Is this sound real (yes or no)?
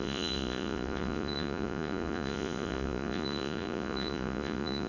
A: no